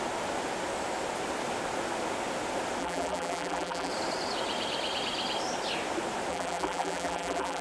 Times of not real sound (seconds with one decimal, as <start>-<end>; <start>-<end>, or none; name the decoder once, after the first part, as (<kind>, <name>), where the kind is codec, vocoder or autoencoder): 2.8-3.9 (vocoder, BigVGAN v2); 6.3-7.6

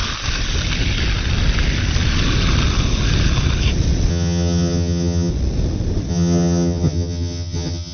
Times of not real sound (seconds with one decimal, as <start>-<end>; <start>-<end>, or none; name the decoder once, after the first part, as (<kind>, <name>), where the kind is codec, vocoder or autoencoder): 4.1-5.3 (vocoder, HiFi-GAN); 6.1-7.9

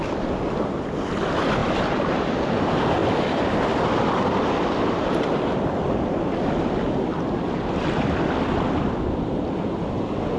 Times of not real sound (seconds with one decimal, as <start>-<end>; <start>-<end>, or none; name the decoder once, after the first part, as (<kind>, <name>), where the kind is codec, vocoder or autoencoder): 1.6-2.1 (vocoder, BigVGAN v2); 3.0-4.4; 7.1-9.9